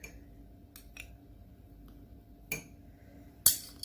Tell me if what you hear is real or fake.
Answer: real